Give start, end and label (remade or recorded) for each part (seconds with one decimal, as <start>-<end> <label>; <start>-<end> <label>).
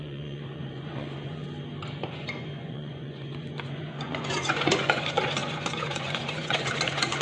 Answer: 0.0-1.4 remade; 1.4-2.1 recorded; 2.1-7.2 remade